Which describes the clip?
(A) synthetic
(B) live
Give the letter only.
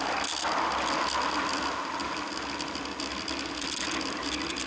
B